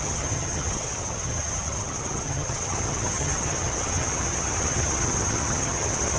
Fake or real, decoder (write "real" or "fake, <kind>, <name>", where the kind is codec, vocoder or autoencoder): fake, vocoder, HiFi-GAN